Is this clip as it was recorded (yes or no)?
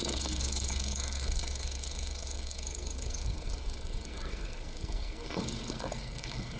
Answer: no